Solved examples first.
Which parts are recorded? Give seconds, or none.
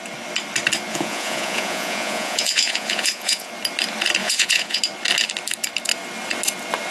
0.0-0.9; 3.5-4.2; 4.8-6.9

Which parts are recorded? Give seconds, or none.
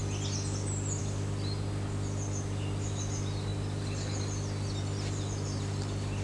0.0-6.2